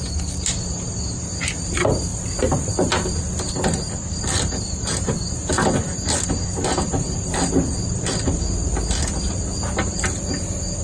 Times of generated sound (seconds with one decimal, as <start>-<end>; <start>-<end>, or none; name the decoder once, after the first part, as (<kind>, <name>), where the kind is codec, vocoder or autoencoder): none